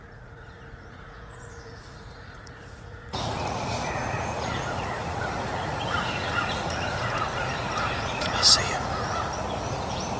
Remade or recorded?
remade